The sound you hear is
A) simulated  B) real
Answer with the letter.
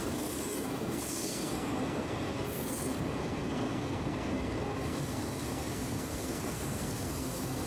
A